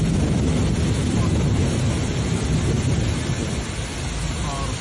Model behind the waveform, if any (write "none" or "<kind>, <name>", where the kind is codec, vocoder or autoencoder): none